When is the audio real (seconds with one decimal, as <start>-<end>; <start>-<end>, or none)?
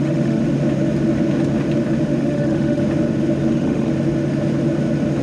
0.4-2.2; 2.8-3.5; 3.9-5.2